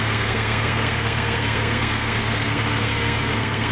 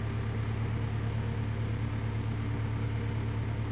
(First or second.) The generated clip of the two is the first